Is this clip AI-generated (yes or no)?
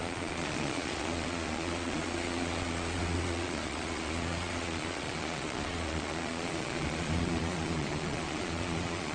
yes